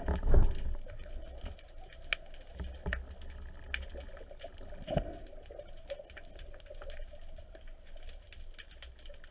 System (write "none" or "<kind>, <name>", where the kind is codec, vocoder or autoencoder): none